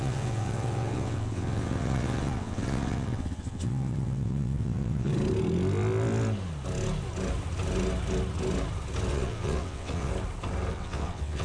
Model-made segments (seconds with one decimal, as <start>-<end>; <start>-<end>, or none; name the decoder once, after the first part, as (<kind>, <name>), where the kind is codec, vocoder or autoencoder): 0.0-5.1 (vocoder, WaveNeXt); 9.1-10.1; 10.7-11.4